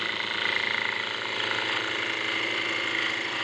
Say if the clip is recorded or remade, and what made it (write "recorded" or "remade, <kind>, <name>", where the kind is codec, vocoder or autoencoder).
recorded